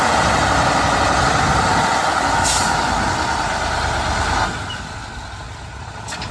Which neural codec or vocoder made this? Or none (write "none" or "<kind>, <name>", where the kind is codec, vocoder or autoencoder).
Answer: none